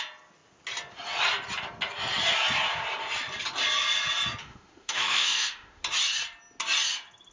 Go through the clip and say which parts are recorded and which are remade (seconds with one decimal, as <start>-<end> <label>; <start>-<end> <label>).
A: 0.0-4.4 recorded; 4.4-5.8 remade; 5.8-7.3 recorded